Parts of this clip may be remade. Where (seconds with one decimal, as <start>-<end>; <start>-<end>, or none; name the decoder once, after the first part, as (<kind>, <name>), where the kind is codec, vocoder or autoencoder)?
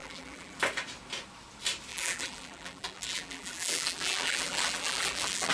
0.0-0.6 (vocoder, BigVGAN v2); 1.9-5.5